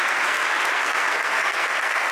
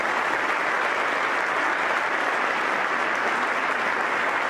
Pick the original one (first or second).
second